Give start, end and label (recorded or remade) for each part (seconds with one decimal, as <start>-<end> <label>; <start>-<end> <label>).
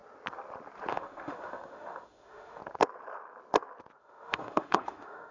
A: 0.0-0.9 recorded; 0.9-2.6 remade; 2.6-4.0 recorded; 4.0-5.3 remade